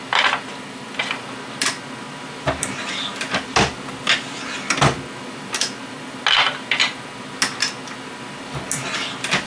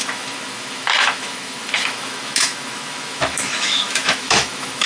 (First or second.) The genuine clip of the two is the first